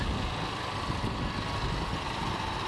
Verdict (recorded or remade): recorded